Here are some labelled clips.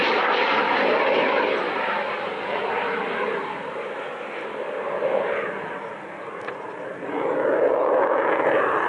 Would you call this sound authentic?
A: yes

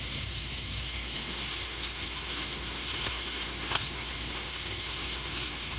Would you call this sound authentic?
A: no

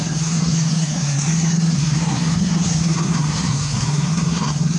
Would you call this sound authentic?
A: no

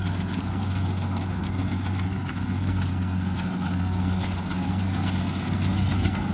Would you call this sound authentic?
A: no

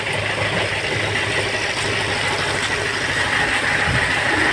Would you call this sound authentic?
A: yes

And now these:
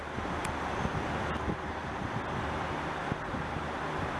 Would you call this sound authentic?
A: yes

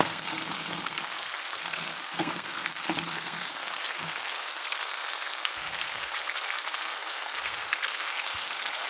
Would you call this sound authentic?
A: no